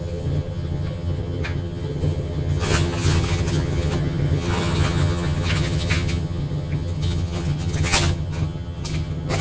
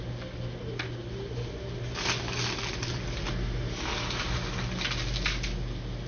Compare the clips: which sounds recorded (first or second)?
second